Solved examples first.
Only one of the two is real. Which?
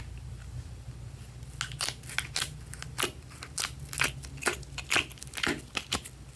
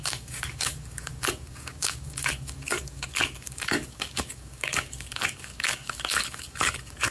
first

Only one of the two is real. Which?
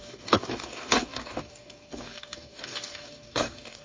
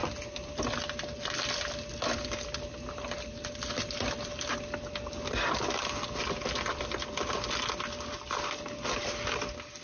second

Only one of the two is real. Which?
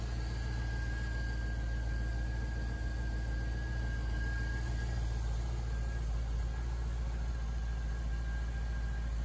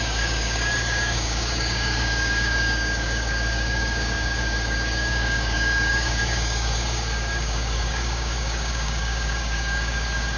first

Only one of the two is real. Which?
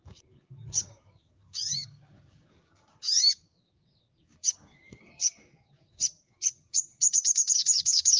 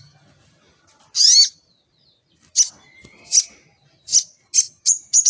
second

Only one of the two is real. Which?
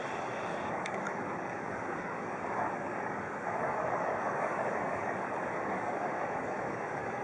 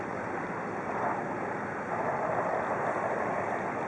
second